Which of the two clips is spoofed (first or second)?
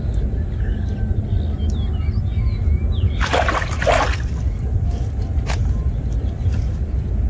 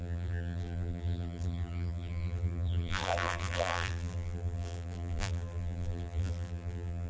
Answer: second